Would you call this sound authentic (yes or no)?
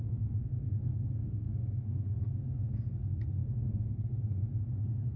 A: no